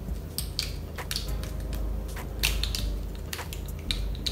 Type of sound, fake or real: real